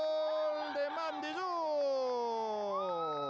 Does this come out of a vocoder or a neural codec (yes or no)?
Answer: no